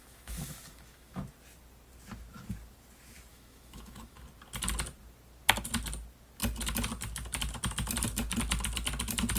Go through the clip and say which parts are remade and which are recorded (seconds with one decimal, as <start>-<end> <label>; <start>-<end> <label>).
0.0-1.2 remade; 1.2-3.3 recorded; 3.3-4.2 remade; 4.2-9.4 recorded